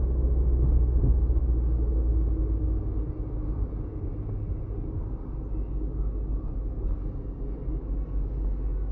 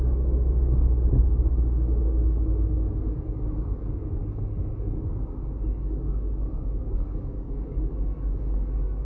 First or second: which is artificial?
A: second